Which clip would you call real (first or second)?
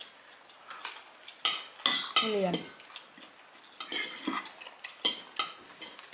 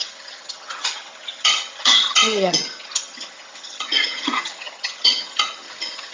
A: first